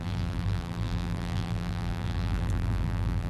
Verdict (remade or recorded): remade